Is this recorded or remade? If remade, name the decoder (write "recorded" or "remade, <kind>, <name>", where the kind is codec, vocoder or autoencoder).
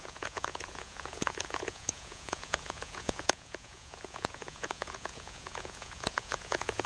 remade, vocoder, Vocos